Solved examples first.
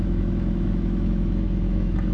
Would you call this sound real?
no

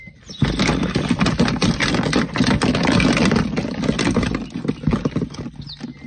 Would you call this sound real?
yes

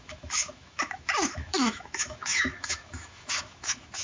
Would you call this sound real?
no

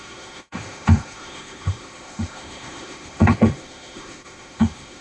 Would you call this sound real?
no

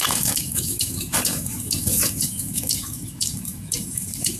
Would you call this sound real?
no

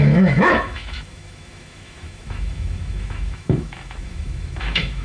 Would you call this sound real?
no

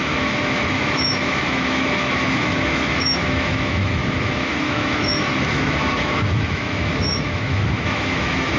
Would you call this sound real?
no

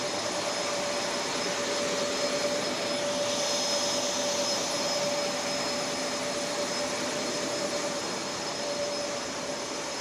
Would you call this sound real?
yes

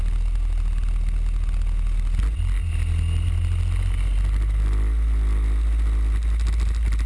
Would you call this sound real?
yes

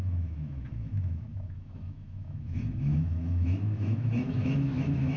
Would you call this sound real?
no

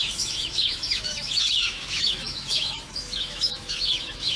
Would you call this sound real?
no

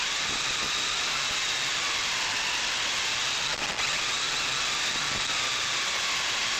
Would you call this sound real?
yes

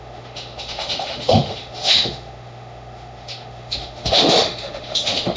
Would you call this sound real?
no